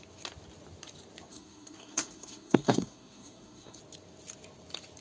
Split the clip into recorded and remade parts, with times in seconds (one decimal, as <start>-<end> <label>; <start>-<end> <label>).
0.0-1.3 recorded; 1.3-3.8 remade; 3.8-5.0 recorded